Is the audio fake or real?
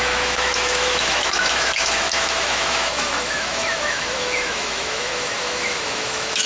fake